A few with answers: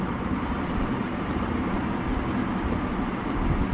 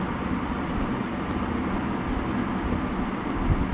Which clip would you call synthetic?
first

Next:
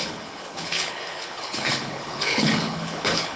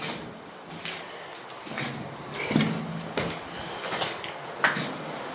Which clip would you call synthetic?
first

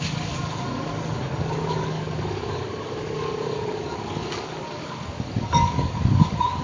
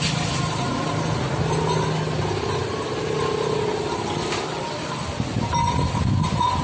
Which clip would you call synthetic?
first